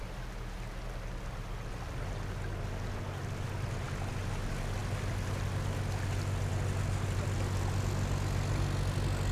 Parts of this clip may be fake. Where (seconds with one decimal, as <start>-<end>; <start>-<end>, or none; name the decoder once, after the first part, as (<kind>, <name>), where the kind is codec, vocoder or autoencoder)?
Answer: none